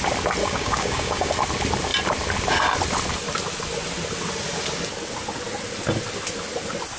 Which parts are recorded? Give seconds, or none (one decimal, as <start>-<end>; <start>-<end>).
0.0-0.4; 1.3-7.0